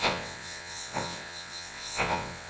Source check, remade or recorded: remade